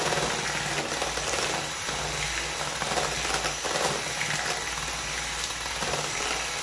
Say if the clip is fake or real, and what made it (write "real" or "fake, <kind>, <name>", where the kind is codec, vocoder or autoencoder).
real